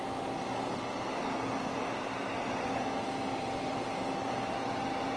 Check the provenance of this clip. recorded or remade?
recorded